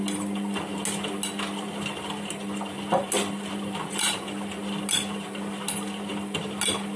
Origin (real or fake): real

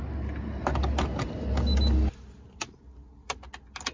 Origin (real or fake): real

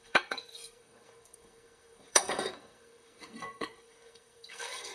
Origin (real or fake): fake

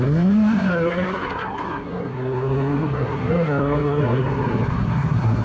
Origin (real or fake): fake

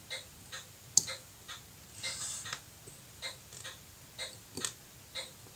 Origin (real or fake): real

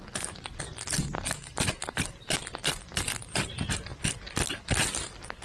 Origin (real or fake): real